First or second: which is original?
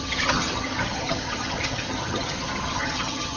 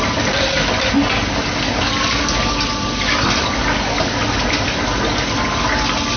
second